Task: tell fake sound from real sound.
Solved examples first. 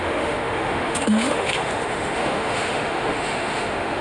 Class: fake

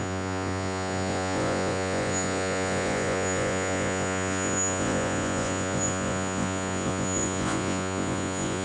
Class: fake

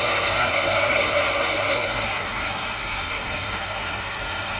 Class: fake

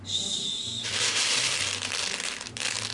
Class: real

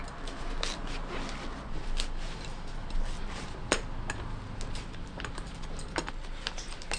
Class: real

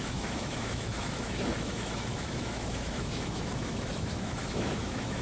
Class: fake